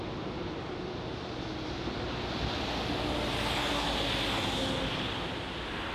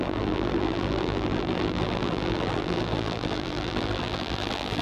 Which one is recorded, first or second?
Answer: first